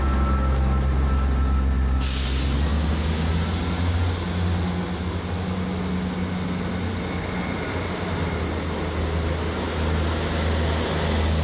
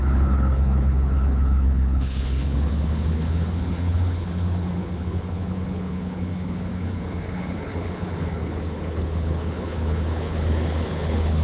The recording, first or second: first